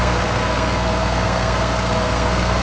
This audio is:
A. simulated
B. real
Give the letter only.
A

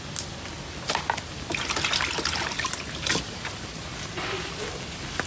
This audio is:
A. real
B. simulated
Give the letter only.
A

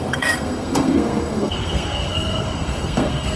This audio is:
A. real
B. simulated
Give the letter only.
B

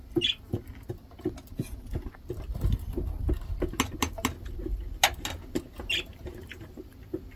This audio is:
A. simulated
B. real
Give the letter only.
B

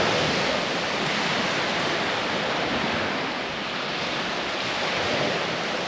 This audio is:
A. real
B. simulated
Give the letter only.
A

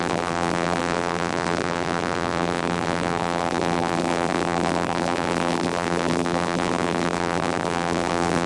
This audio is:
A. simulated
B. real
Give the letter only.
A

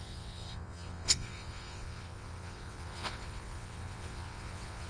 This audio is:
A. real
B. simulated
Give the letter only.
B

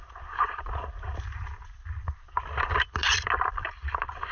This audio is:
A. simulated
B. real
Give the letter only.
A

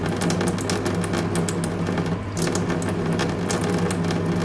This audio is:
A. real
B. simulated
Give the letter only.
A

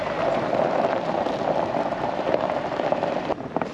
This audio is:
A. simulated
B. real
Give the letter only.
A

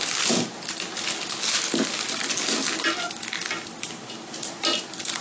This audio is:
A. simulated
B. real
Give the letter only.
B